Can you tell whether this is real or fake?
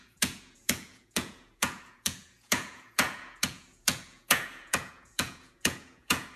fake